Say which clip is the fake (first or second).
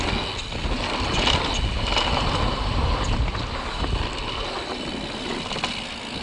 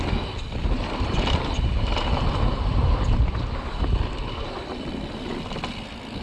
second